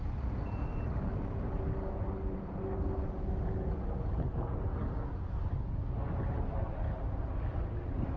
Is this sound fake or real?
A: real